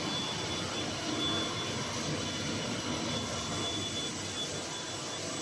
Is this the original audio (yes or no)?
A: yes